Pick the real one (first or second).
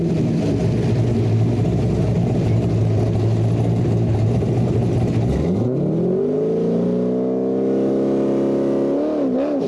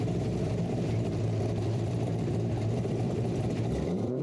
first